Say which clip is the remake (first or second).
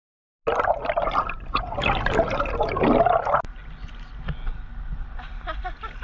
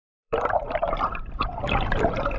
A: second